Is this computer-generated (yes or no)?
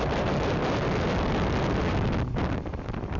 no